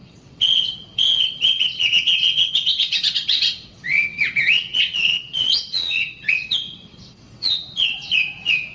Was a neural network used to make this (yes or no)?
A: yes